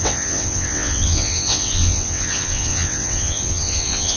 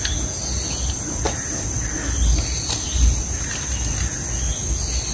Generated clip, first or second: first